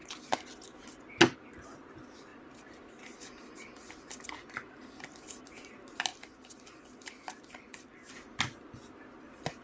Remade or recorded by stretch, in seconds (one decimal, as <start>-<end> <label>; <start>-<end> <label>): 0.0-0.6 remade; 0.6-2.3 recorded; 2.3-5.4 remade; 5.4-6.1 recorded; 6.1-8.1 remade; 8.1-9.6 recorded